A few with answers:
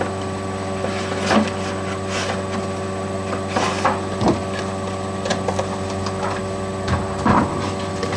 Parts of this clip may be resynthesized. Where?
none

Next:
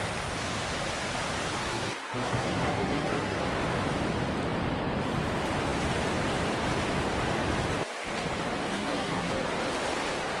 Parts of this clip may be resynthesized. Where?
1.6-3.4 (codec, SNAC); 8.7-9.3